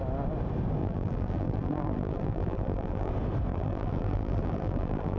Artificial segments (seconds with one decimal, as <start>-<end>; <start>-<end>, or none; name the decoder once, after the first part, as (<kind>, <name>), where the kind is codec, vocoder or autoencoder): 0.8-3.1 (vocoder, BigVGAN v2); 3.5-5.2